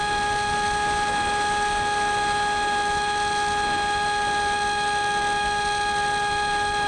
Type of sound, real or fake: real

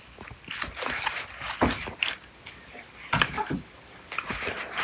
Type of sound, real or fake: real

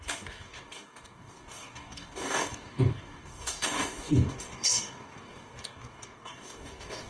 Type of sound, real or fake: fake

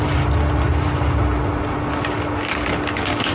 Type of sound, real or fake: real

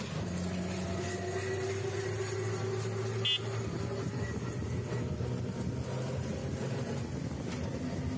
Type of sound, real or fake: real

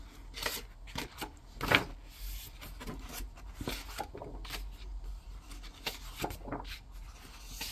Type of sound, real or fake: real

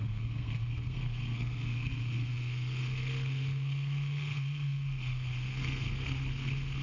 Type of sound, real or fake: fake